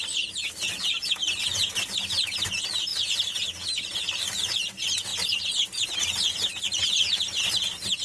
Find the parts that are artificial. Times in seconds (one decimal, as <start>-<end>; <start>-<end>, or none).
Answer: none